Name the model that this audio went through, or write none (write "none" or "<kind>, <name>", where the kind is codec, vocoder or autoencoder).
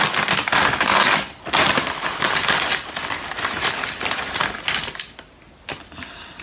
none